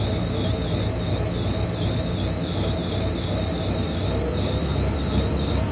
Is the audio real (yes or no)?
yes